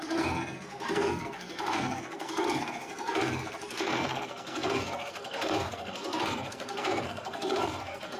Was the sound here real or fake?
fake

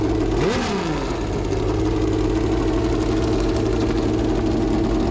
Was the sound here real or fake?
real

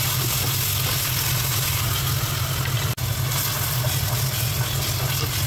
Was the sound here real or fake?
real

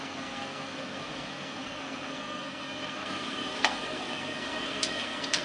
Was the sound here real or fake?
fake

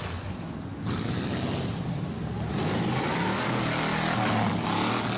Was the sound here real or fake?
real